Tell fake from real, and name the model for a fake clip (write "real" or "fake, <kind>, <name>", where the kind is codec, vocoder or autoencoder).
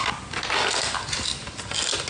real